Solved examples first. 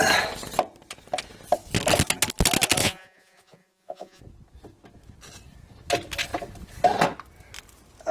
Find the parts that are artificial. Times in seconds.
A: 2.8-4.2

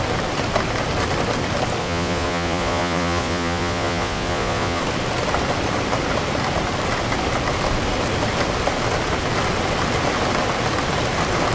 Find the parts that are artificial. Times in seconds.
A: 1.8-4.8

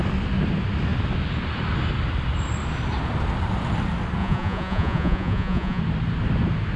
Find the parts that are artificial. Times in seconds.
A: 4.2-5.8

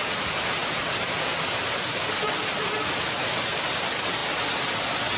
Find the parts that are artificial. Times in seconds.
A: none

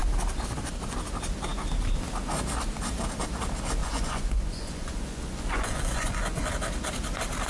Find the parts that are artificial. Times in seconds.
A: 3.8-6.5

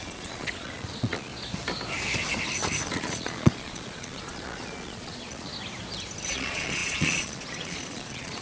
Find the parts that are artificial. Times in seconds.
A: 0.0-1.3; 2.8-5.5; 6.3-8.4

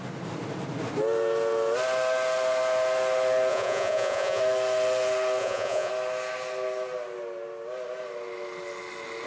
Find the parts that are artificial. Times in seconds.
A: 3.5-4.4; 5.4-5.9

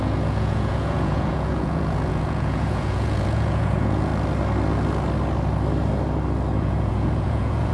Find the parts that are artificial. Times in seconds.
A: 0.0-4.1; 6.6-7.7